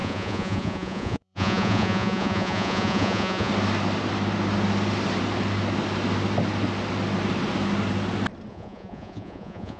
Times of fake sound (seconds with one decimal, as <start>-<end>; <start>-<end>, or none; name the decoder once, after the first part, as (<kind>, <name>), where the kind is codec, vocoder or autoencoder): 0.0-3.5 (vocoder, Vocos); 8.5-9.8